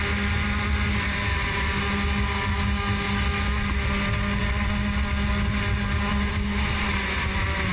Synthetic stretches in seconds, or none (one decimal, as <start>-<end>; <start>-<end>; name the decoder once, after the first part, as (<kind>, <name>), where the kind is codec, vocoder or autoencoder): none